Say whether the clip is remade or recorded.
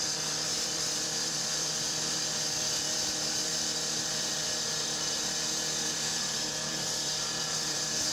remade